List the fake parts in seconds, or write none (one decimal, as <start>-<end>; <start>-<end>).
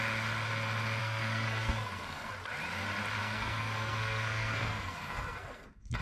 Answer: 1.0-2.3; 3.2-6.0